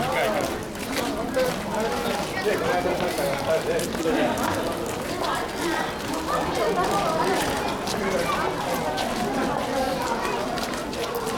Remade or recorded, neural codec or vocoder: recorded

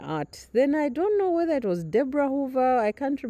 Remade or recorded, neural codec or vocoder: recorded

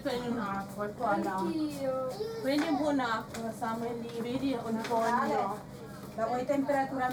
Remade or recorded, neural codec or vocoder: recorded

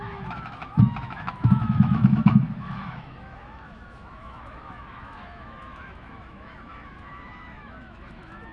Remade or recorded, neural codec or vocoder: remade, autoencoder, DAC-VAE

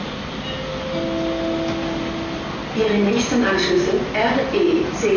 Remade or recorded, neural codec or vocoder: recorded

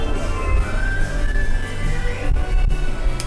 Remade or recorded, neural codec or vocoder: recorded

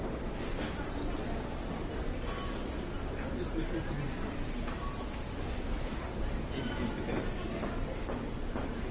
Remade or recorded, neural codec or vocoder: recorded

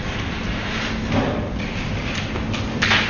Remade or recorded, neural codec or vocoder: recorded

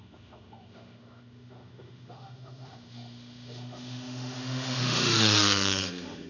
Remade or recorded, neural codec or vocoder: remade, autoencoder, DAC-VAE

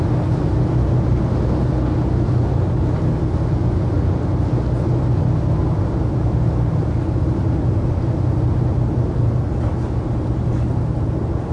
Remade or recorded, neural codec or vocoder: recorded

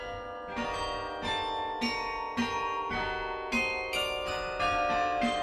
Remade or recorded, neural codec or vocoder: recorded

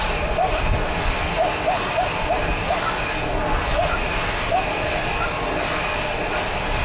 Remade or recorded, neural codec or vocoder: recorded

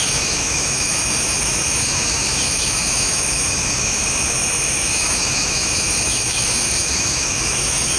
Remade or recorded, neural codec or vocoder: remade, autoencoder, DAC-VAE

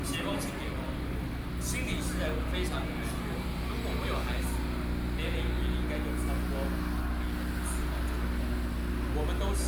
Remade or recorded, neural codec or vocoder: recorded